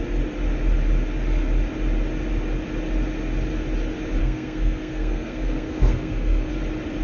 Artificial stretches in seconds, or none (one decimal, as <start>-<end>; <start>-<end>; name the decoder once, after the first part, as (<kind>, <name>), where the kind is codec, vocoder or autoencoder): 4.2-6.5 (codec, SNAC)